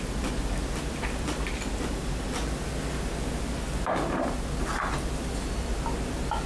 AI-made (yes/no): no